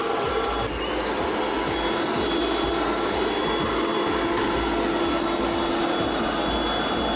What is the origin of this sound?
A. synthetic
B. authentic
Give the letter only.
B